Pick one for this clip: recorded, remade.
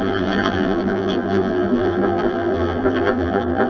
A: remade